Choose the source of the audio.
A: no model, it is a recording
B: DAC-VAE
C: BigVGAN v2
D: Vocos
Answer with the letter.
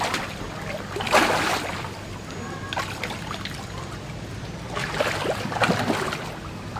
A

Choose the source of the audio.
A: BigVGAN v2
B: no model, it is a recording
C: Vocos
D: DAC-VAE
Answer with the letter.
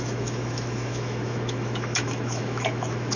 D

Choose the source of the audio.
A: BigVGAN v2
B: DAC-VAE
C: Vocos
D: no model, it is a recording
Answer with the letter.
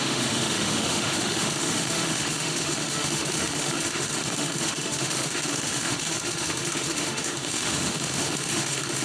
B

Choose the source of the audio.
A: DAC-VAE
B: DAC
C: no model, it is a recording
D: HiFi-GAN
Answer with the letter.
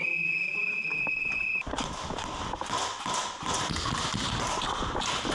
C